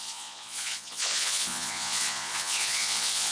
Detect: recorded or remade remade